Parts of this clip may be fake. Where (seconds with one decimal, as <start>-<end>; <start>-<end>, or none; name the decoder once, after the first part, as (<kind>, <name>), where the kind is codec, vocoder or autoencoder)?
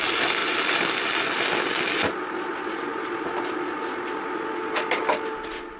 none